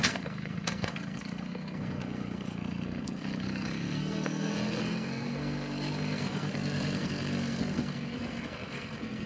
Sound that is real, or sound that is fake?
fake